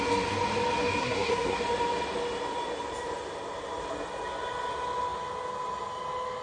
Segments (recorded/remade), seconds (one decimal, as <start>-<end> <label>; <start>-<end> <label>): 0.0-1.0 recorded; 1.0-1.6 remade; 1.6-6.4 recorded